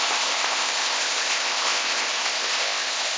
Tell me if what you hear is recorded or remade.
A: remade